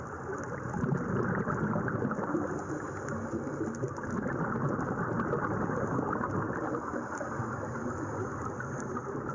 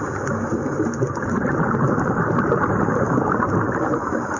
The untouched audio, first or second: first